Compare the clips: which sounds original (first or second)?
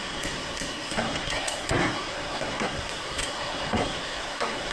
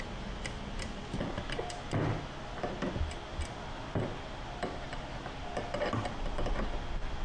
second